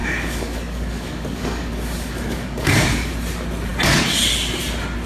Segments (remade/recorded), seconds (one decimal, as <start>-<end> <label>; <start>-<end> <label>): 0.0-3.1 remade; 3.1-5.1 recorded